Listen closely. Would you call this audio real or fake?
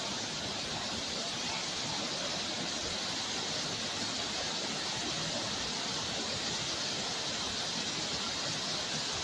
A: real